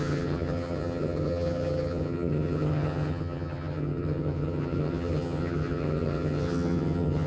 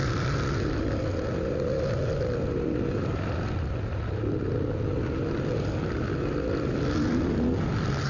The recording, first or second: second